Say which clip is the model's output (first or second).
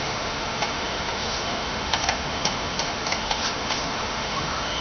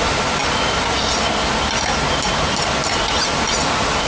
first